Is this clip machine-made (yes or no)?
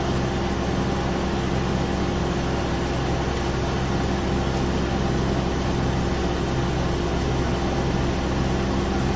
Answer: no